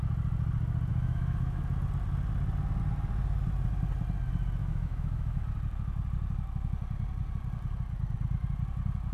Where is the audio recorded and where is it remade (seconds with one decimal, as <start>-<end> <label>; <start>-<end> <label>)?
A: 0.0-0.9 recorded; 0.9-1.6 remade; 1.6-4.6 recorded; 4.6-5.4 remade; 5.4-9.1 recorded

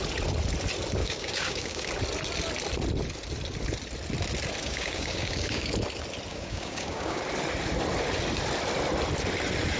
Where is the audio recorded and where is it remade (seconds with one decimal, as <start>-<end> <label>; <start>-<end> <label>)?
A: 0.0-1.0 recorded; 1.0-1.9 remade; 1.9-4.6 recorded; 4.6-5.7 remade; 5.7-6.3 recorded; 6.3-7.2 remade; 7.2-9.8 recorded

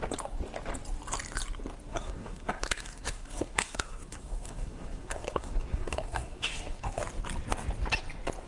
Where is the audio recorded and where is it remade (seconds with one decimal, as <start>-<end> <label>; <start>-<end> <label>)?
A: 0.0-1.9 recorded; 1.9-7.0 remade; 7.0-8.5 recorded

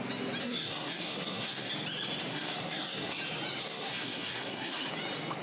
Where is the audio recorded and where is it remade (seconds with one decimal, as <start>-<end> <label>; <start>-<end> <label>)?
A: 0.0-0.4 recorded; 0.4-1.7 remade; 1.7-2.3 recorded; 2.3-3.2 remade; 3.2-3.6 recorded; 3.6-4.9 remade; 4.9-5.4 recorded

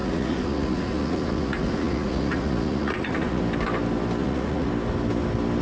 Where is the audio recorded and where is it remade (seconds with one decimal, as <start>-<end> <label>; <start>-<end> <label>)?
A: 0.0-3.4 remade; 3.4-4.2 recorded; 4.2-4.7 remade; 4.7-5.6 recorded

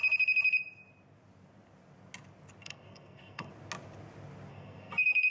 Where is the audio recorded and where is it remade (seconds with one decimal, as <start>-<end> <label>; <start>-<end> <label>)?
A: 0.0-2.6 recorded; 2.6-3.5 remade; 3.5-4.5 recorded; 4.5-5.3 remade

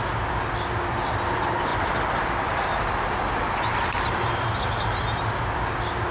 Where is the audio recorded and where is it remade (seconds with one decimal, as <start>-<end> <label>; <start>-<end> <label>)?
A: 0.0-1.7 recorded; 1.7-5.4 remade; 5.4-6.1 recorded